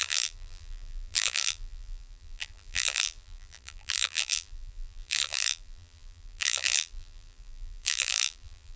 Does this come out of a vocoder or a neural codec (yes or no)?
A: yes